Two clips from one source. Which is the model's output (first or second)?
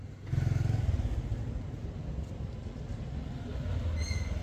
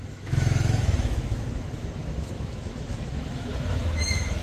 second